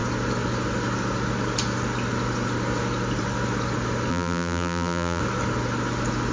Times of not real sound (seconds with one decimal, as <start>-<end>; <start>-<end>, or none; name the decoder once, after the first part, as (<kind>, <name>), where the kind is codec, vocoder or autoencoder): 4.1-5.2 (vocoder, BigVGAN v2)